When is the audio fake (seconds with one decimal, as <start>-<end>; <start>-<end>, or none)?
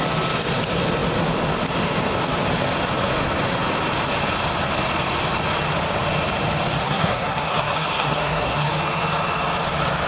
6.8-8.7